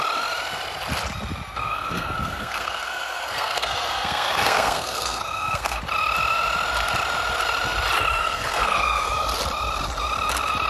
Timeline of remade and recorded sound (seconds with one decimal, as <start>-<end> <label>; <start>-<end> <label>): 0.0-1.5 recorded; 1.5-5.8 remade; 5.8-8.2 recorded; 8.2-9.1 remade; 9.1-10.7 recorded